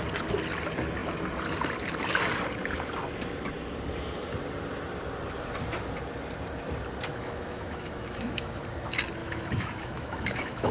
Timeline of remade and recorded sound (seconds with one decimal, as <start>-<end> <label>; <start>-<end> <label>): 0.0-7.1 recorded; 7.1-8.6 remade; 8.6-9.2 recorded; 9.2-10.7 remade